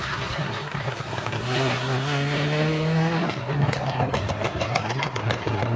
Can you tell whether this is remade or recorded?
remade